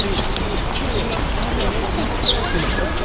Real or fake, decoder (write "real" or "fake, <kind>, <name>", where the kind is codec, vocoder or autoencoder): real